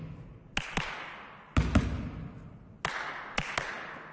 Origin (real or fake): real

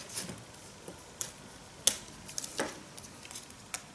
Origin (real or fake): real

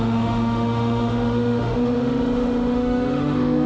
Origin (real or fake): fake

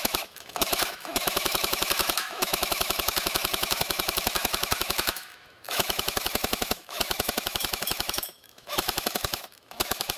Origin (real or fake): fake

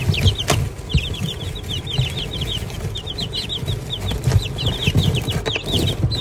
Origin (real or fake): real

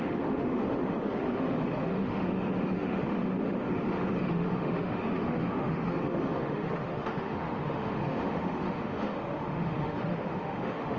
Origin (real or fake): fake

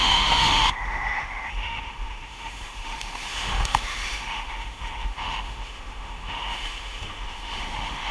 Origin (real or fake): fake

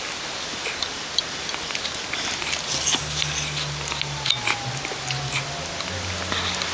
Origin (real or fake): real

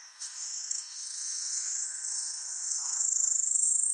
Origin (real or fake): fake